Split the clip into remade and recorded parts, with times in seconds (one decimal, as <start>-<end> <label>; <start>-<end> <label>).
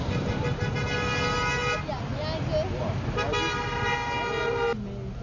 0.0-5.2 recorded